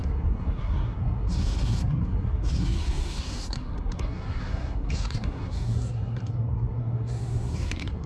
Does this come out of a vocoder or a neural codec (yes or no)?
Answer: yes